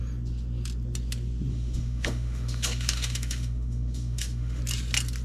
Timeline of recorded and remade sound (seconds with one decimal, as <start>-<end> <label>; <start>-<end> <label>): 0.0-1.5 recorded; 1.5-4.6 remade; 4.6-5.2 recorded